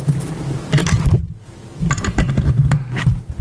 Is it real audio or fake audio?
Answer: real